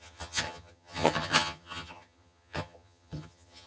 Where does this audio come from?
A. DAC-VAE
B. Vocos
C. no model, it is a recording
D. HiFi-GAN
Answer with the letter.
D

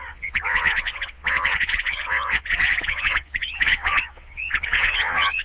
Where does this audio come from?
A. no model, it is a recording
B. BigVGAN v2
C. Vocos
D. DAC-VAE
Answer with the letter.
C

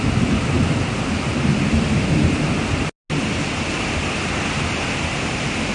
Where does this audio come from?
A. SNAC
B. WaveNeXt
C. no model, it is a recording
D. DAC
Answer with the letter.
C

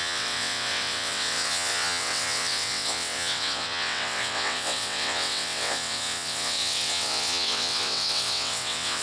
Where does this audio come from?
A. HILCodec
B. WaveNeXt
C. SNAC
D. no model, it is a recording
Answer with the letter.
B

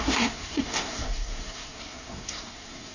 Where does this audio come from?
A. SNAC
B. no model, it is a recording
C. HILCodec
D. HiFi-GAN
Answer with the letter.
A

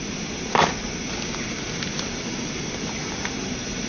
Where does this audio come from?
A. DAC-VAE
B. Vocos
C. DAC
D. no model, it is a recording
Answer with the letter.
D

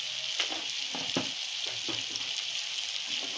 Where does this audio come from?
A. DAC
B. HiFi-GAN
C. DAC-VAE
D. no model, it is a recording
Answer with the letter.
D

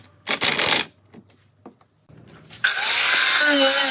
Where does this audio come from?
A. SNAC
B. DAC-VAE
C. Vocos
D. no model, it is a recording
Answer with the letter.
D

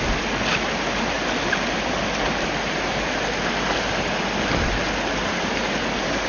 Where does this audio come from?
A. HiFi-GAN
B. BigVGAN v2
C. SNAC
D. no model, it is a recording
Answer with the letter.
D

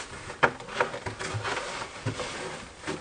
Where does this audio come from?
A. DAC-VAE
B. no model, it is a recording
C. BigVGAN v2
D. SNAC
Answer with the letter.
B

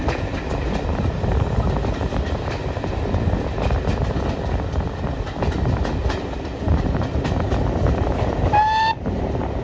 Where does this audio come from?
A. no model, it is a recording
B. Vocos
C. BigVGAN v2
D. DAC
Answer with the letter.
A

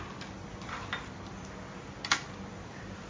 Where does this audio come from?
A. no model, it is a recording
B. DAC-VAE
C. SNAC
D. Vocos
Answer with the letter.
A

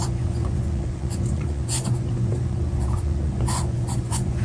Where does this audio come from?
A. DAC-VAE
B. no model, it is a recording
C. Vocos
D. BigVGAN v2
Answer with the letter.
C